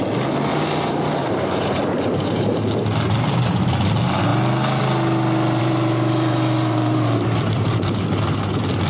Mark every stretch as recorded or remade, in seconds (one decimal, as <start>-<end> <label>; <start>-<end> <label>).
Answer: 0.0-0.5 recorded; 0.5-2.5 remade; 2.5-5.6 recorded; 5.6-8.0 remade; 8.0-8.9 recorded